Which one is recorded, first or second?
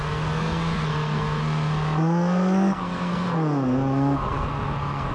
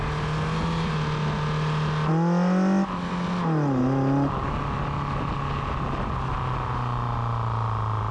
second